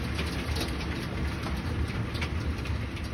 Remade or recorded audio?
recorded